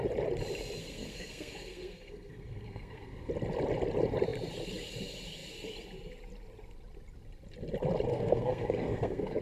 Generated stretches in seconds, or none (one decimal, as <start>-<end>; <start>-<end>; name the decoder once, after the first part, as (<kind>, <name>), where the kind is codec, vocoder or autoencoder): 0.8-3.3 (codec, SNAC); 8.1-9.4